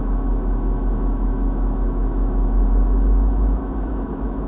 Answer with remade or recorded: remade